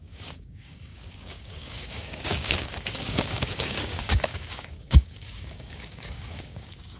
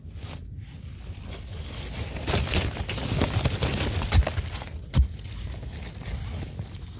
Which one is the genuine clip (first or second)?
second